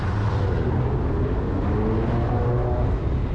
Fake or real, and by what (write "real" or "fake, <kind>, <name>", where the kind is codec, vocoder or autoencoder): real